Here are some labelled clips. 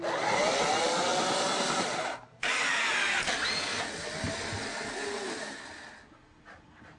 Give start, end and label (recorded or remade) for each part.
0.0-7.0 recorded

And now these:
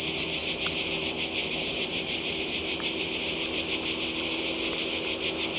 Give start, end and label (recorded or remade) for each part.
0.0-1.4 recorded; 1.4-3.0 remade; 3.0-5.6 recorded

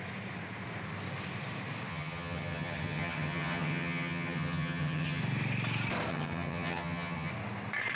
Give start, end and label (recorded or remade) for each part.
0.0-1.9 recorded; 1.9-5.2 remade; 5.2-6.1 recorded; 6.1-7.3 remade; 7.3-8.0 recorded

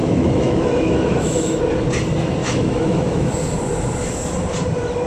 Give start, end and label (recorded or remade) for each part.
0.0-1.6 remade; 1.6-2.4 recorded; 2.4-3.3 remade; 3.3-5.1 recorded

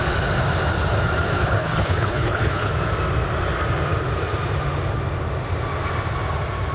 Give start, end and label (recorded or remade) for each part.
0.0-1.4 recorded; 1.4-2.7 remade; 2.7-6.7 recorded

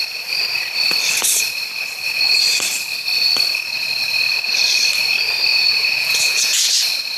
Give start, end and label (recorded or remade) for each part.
0.0-5.5 recorded; 5.5-6.7 remade; 6.7-7.2 recorded

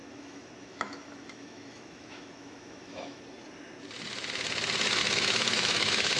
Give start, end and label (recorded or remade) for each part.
0.0-3.2 remade; 3.2-5.0 recorded; 5.0-6.2 remade